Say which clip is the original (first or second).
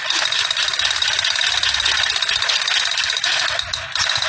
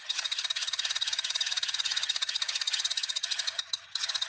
first